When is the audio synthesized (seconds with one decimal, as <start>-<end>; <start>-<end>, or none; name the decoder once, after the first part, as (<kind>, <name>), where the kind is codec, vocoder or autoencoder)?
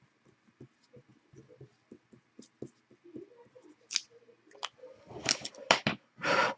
none